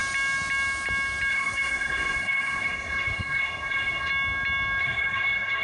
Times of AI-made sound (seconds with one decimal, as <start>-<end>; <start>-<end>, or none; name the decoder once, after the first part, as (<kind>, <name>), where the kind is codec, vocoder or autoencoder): 1.3-4.1 (codec, SNAC); 4.8-5.6